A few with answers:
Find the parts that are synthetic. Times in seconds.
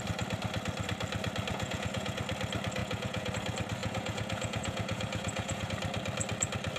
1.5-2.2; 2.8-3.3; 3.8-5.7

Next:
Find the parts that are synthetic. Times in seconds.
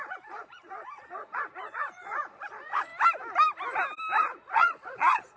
0.0-2.9; 4.2-5.4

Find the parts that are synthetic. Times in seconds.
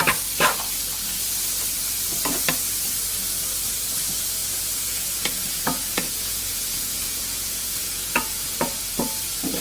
4.4-8.8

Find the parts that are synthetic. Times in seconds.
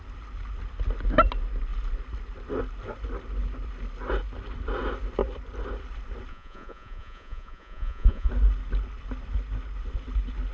6.3-8.3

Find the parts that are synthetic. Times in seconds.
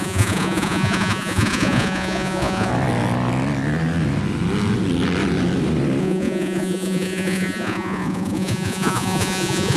0.0-2.7; 6.0-9.8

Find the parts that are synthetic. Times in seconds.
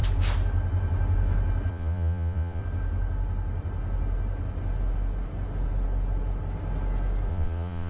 1.7-2.6; 7.3-7.9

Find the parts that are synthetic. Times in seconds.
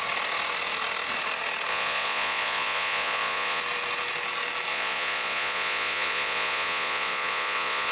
1.7-3.6; 4.7-7.9